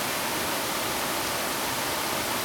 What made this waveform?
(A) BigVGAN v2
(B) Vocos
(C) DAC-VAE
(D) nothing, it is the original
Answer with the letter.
D